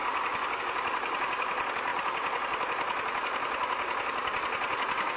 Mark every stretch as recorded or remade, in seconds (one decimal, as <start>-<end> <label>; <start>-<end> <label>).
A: 0.0-0.6 recorded; 0.6-1.9 remade; 1.9-5.2 recorded